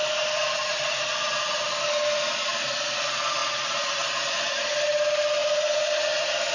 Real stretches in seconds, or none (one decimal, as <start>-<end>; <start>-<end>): 0.0-6.5